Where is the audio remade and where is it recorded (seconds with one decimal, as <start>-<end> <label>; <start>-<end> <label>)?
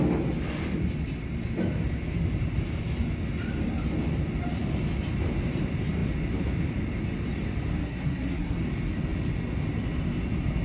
0.0-7.8 recorded; 7.8-8.6 remade; 8.6-10.6 recorded